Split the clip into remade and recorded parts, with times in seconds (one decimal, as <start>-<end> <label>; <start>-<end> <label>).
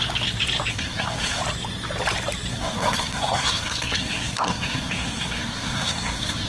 0.0-0.7 recorded; 0.7-1.4 remade; 1.4-2.5 recorded; 2.5-6.5 remade